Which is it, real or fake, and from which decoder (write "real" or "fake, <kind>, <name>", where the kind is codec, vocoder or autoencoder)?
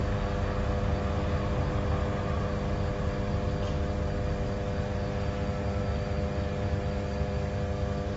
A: real